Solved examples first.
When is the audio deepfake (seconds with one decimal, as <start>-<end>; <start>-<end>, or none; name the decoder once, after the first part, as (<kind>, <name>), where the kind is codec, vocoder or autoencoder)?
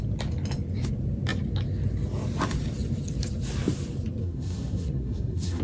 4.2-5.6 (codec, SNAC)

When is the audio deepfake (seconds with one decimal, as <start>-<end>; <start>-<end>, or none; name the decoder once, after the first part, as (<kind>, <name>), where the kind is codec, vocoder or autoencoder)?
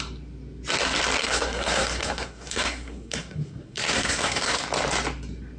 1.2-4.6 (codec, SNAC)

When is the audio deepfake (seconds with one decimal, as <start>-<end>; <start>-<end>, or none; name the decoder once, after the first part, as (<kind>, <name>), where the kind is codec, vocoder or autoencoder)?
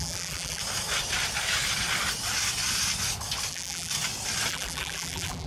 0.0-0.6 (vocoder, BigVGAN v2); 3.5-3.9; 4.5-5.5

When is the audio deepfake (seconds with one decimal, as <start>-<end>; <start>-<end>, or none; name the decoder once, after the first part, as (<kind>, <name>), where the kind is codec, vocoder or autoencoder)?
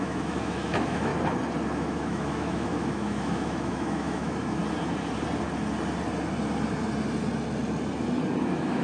0.0-1.1 (autoencoder, DAC-VAE); 1.7-4.6; 8.4-8.8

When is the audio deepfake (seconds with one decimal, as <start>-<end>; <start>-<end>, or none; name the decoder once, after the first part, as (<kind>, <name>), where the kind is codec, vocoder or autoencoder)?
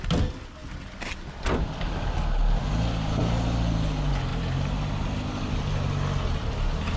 none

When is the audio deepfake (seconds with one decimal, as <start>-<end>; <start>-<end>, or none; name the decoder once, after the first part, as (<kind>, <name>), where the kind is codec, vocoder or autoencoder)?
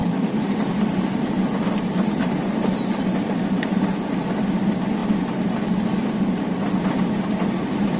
0.0-3.0 (vocoder, BigVGAN v2)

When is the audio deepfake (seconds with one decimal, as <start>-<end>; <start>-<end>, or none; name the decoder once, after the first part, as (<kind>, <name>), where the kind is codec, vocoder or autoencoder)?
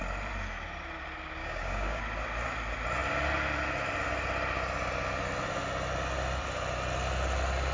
1.4-2.0 (codec, DAC)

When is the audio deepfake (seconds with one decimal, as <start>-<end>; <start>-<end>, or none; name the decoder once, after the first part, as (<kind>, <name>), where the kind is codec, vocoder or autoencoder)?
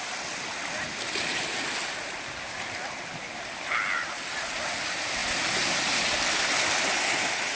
none